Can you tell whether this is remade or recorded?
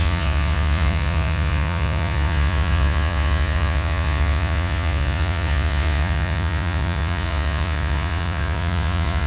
remade